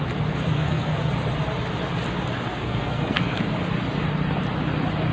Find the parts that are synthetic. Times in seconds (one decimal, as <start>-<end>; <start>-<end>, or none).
0.5-1.1; 2.6-3.4